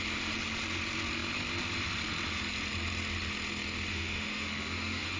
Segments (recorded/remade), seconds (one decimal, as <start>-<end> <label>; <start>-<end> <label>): 0.0-3.9 recorded; 3.9-5.2 remade